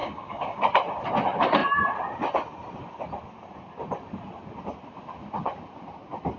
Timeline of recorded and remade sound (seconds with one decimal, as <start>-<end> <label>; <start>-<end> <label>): 0.0-0.6 remade; 0.6-6.4 recorded